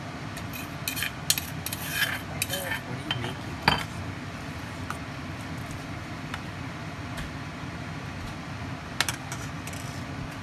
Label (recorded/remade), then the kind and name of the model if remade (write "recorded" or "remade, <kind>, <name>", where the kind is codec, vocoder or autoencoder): recorded